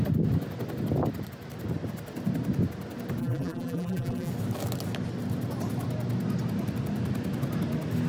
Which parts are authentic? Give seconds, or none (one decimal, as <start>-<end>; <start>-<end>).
0.0-3.2; 4.3-8.1